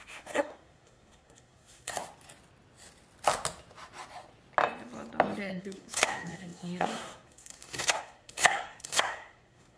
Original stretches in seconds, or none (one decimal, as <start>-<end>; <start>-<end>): 2.0-5.4